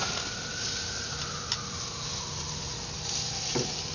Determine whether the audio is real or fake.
real